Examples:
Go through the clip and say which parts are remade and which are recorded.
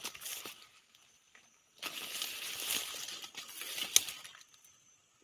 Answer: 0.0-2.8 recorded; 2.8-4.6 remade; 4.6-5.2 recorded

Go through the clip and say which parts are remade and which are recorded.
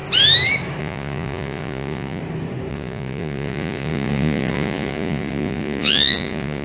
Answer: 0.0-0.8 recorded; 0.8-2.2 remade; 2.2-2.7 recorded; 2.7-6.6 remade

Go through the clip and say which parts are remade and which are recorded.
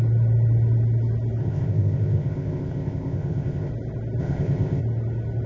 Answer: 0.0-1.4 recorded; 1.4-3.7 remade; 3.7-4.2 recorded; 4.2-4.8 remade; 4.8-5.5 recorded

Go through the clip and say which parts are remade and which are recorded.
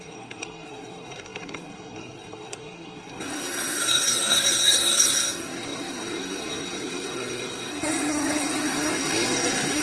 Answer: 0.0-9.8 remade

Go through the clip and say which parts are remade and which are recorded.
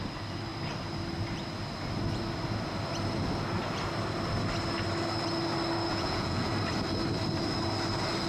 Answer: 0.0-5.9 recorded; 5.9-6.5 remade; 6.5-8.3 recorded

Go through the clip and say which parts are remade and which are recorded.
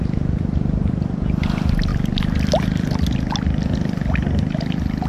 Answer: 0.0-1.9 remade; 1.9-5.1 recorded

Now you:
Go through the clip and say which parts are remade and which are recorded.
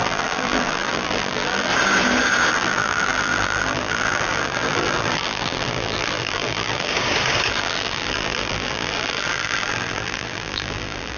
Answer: 0.0-1.7 remade; 1.7-2.5 recorded; 2.5-6.9 remade; 6.9-7.5 recorded; 7.5-11.2 remade